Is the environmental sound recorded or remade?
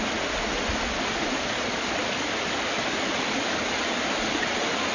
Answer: recorded